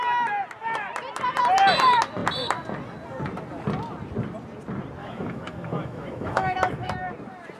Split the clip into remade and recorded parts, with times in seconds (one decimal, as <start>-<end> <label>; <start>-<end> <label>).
0.0-5.0 recorded; 5.0-6.9 remade; 6.9-7.6 recorded